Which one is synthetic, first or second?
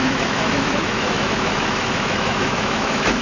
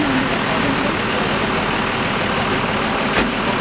first